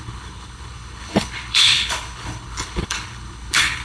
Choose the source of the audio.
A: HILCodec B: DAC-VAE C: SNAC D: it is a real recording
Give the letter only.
A